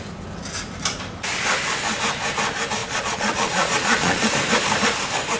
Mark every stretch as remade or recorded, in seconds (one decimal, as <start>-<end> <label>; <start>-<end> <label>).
0.0-2.8 recorded; 2.8-4.3 remade; 4.3-5.4 recorded